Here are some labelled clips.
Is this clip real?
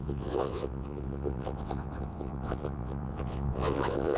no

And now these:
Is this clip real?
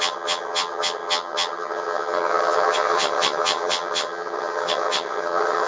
no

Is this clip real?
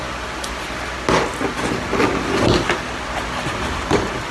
yes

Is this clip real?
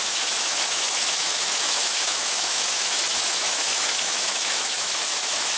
no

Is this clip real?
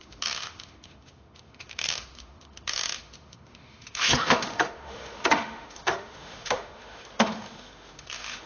no